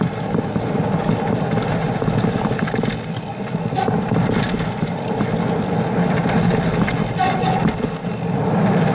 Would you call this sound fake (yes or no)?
no